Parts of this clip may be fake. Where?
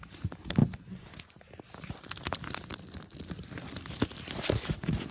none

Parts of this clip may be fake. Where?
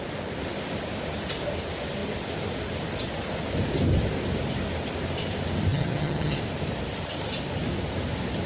5.7-6.4